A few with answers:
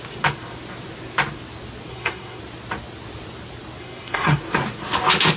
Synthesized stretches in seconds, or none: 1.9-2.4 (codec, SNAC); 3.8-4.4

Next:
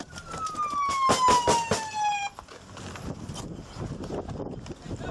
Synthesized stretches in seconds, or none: none

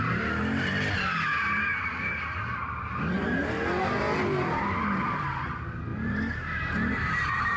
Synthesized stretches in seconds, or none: none

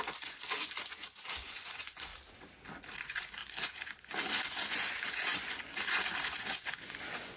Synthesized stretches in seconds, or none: 0.0-2.1 (vocoder, Vocos); 3.0-7.4

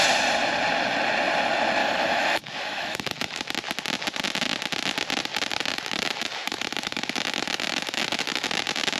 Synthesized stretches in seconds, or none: 1.8-3.4 (autoencoder, DAC-VAE); 5.7-8.5

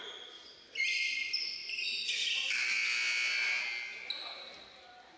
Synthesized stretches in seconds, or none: none

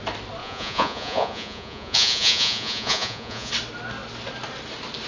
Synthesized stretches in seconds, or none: 0.4-3.5 (vocoder, Vocos)

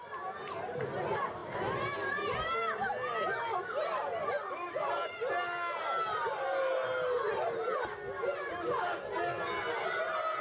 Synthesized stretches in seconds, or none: none